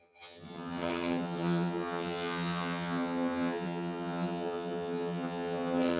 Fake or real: fake